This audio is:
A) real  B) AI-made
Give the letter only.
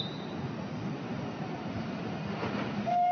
A